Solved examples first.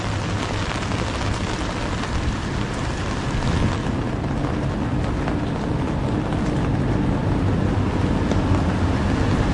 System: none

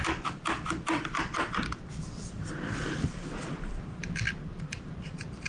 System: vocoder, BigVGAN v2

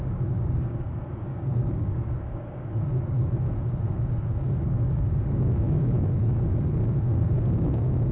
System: codec, DAC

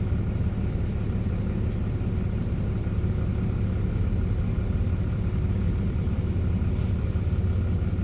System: none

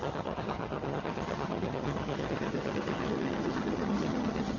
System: vocoder, HiFi-GAN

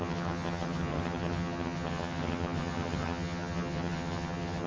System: vocoder, HiFi-GAN